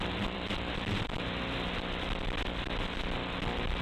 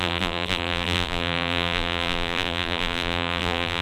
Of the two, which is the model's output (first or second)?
second